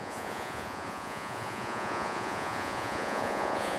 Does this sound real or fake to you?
fake